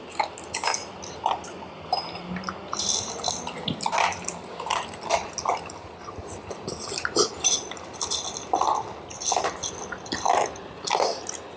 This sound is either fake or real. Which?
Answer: real